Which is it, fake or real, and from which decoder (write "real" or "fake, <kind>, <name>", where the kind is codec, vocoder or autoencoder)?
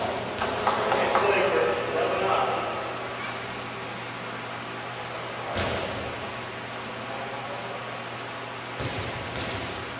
real